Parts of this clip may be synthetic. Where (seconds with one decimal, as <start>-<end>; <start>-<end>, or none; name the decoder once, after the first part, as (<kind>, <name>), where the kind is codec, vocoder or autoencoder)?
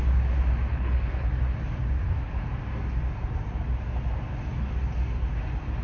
0.7-1.3 (codec, HILCodec)